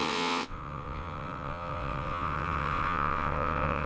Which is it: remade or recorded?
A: remade